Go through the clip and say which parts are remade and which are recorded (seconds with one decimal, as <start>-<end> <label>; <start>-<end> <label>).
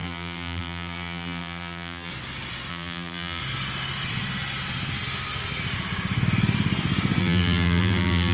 0.0-2.1 remade; 2.1-2.7 recorded; 2.7-3.4 remade; 3.4-7.2 recorded; 7.2-8.3 remade